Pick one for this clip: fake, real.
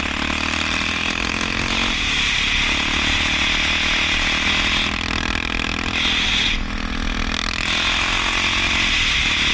real